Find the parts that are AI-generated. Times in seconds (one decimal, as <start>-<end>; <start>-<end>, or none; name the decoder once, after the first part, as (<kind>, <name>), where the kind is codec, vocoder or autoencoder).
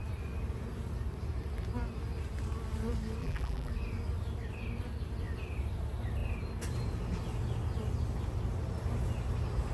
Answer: 3.2-3.7 (vocoder, BigVGAN v2)